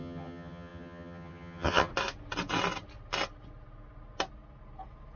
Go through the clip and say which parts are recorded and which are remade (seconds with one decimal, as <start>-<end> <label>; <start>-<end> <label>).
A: 0.0-1.9 remade; 1.9-5.2 recorded